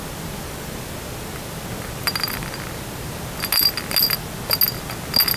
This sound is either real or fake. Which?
real